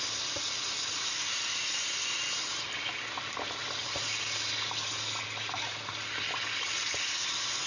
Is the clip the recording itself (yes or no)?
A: yes